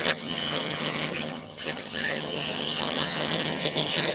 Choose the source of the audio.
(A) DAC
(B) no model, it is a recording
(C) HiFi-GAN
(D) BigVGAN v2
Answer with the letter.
C